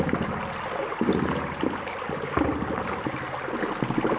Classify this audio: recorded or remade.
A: recorded